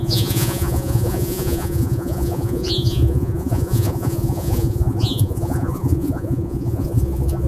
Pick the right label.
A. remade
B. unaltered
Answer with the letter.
A